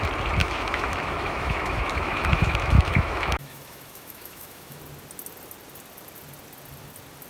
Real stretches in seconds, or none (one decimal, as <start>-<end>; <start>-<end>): 0.0-0.4; 4.8-7.3